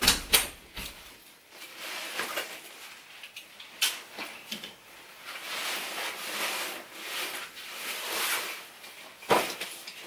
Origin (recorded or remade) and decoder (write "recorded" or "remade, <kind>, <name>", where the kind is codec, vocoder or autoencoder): remade, vocoder, BigVGAN v2